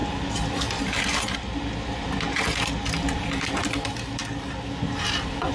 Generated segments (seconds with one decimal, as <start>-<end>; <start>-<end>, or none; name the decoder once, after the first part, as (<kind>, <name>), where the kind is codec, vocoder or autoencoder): none